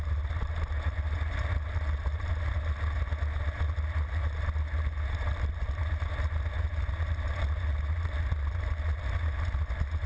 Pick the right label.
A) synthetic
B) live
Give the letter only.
B